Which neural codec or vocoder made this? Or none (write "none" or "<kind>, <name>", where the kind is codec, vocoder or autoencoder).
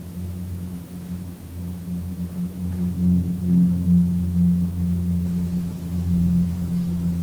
autoencoder, DAC-VAE